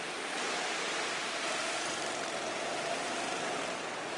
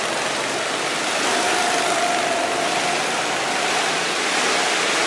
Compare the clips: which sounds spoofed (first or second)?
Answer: first